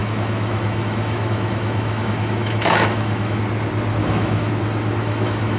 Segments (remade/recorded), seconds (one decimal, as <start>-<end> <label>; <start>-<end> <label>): 0.0-3.4 remade; 3.4-4.0 recorded; 4.0-4.5 remade; 4.5-5.0 recorded; 5.0-5.6 remade

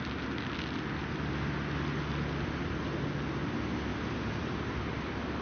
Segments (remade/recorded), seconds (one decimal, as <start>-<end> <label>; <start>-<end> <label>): 0.0-3.9 recorded; 3.9-4.6 remade; 4.6-5.4 recorded